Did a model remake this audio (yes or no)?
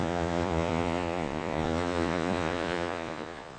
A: yes